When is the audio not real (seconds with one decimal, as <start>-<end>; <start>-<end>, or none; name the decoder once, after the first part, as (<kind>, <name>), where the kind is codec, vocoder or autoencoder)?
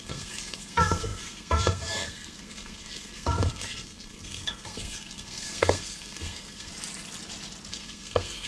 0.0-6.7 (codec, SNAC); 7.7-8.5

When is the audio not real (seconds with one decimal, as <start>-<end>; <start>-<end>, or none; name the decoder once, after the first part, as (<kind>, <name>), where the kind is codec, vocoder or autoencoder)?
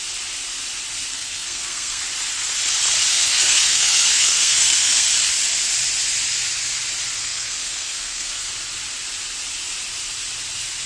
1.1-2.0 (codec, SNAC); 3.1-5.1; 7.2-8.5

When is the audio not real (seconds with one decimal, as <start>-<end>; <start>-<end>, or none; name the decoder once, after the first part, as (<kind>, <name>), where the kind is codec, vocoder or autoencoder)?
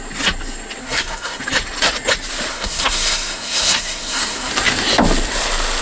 0.8-1.4 (codec, SNAC); 2.5-4.5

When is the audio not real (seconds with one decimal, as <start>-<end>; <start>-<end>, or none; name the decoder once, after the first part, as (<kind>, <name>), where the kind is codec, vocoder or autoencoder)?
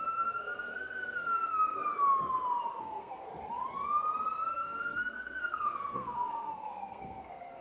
0.0-1.8 (codec, SNAC); 2.8-3.3; 4.5-7.6